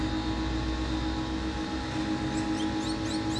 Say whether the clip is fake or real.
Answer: real